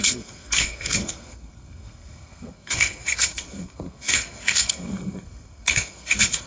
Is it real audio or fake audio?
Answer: fake